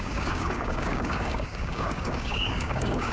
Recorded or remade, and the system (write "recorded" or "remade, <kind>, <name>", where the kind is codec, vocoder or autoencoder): remade, codec, DAC